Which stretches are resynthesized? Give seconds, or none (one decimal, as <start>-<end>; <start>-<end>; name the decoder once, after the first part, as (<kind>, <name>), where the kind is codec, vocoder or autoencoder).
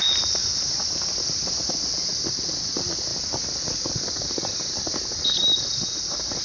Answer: none